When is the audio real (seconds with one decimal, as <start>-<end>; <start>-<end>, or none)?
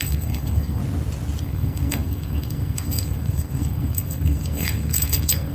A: 0.8-1.4